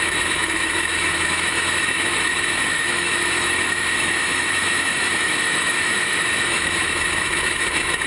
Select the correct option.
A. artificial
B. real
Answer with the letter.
A